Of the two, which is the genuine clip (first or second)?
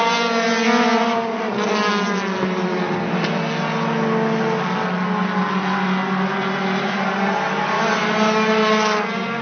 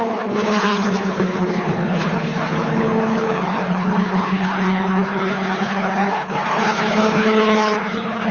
first